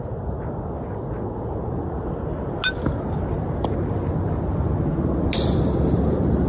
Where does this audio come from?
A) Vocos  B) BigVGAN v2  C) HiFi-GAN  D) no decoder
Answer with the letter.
D